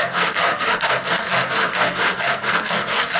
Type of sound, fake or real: fake